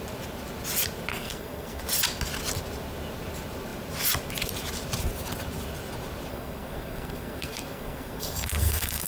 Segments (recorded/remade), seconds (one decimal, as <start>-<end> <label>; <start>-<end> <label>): 0.0-1.1 recorded; 1.1-1.8 remade; 1.8-6.3 recorded; 6.3-9.1 remade